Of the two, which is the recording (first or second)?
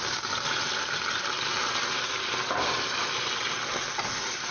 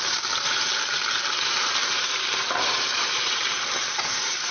first